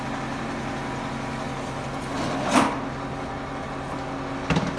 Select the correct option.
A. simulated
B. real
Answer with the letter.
B